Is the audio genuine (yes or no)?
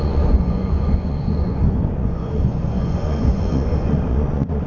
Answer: no